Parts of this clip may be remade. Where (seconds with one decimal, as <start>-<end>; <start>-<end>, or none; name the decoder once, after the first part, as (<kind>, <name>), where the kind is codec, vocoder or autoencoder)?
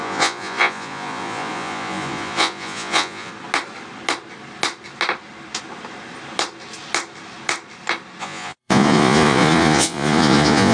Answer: 0.0-3.3 (vocoder, Vocos); 8.2-10.7